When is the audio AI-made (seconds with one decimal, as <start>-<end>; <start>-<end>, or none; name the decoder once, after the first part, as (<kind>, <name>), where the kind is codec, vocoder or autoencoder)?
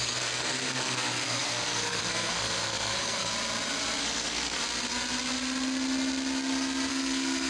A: 0.0-3.3 (codec, SNAC); 4.0-4.6; 6.9-7.5